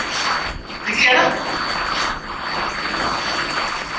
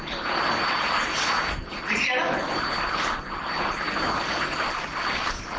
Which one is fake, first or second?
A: second